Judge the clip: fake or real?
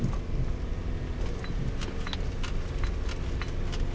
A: real